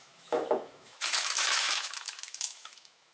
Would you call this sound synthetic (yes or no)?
yes